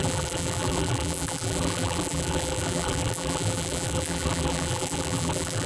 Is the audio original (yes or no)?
no